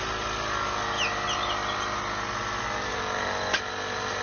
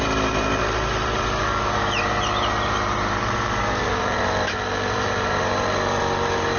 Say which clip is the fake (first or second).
second